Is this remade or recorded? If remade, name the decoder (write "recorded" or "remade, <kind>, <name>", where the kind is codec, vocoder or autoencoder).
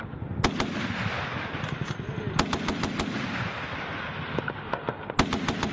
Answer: recorded